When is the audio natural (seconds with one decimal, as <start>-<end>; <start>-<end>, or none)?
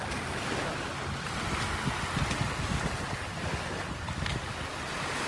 0.0-5.3